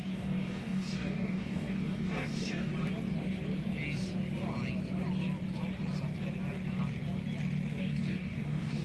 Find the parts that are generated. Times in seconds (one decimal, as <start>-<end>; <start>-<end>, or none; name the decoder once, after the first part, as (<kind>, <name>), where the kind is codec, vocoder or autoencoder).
0.0-2.7 (codec, DAC); 7.8-8.8